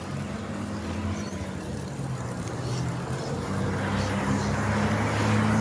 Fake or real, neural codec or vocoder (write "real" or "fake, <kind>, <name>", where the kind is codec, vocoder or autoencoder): real